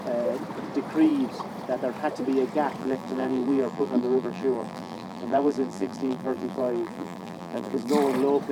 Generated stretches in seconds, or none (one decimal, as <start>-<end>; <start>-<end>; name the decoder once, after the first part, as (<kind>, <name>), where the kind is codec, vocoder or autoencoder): 2.8-7.9 (vocoder, BigVGAN v2)